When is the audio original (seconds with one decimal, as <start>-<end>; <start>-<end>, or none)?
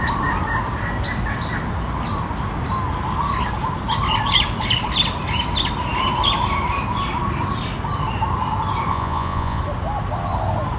0.0-8.9; 9.6-10.8